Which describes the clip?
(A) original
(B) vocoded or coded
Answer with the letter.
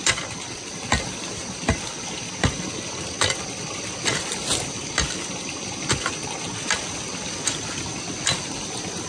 A